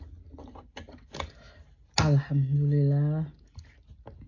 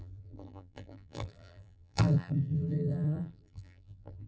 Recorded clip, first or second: first